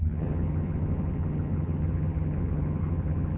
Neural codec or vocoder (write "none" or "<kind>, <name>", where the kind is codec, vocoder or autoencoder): vocoder, HiFi-GAN